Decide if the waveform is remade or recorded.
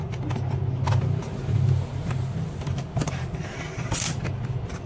recorded